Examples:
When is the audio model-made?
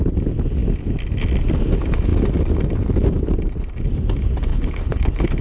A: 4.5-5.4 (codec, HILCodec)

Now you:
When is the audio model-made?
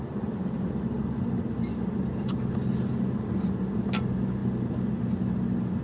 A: none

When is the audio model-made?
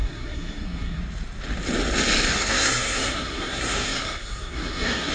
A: 0.0-1.0 (codec, SNAC); 2.3-5.1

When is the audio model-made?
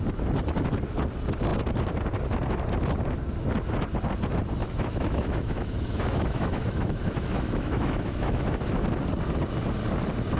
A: 4.6-8.8 (autoencoder, DAC-VAE)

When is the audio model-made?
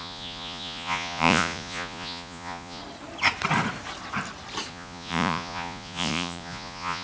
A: 0.0-2.8 (vocoder, Vocos); 4.7-7.0